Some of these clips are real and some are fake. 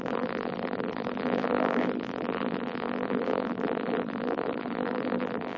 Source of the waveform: fake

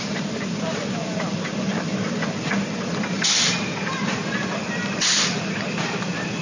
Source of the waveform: real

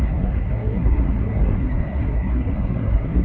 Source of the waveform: fake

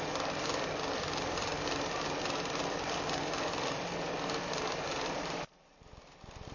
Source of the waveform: real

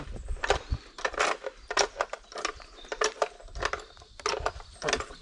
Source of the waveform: real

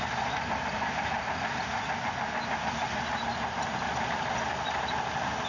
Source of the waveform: real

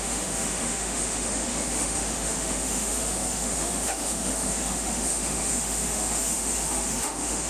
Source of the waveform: fake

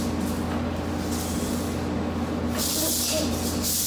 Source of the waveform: real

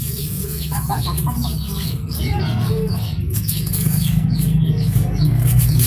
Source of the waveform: fake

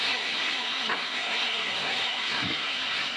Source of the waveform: fake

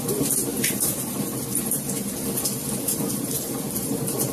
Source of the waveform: real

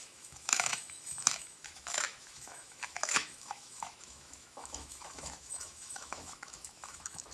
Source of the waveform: fake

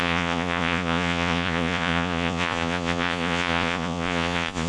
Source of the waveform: fake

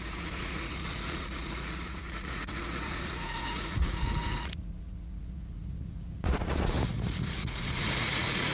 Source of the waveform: fake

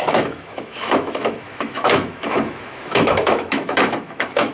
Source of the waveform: fake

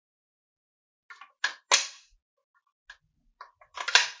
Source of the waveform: real